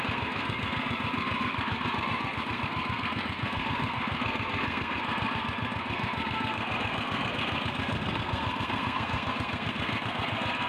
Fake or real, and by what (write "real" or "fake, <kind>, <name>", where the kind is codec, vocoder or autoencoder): fake, codec, SNAC